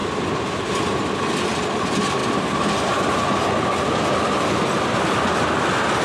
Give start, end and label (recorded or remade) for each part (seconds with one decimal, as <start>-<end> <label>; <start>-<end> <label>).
0.0-6.0 recorded